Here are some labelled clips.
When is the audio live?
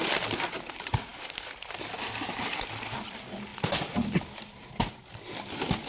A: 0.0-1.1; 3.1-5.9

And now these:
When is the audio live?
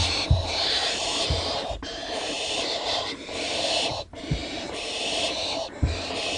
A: none